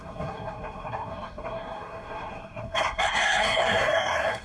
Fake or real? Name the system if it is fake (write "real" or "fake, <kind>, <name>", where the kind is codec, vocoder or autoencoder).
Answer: fake, codec, SNAC